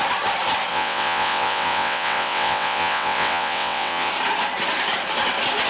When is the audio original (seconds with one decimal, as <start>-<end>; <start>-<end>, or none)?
0.0-0.7; 4.1-5.7